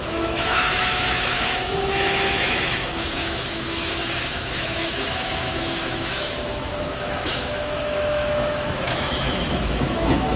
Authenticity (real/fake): fake